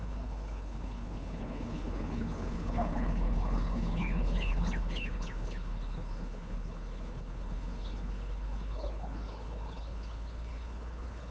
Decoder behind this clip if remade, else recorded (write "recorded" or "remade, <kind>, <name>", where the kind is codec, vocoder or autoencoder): remade, codec, HILCodec